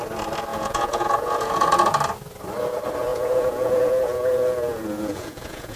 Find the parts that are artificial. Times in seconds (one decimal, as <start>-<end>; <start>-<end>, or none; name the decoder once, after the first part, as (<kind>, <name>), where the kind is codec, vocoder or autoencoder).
0.5-1.9 (vocoder, Vocos); 3.1-5.8